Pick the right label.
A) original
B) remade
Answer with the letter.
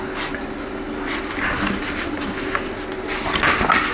A